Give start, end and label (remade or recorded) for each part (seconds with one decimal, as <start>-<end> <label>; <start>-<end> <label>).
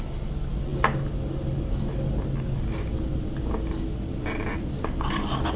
0.0-5.6 recorded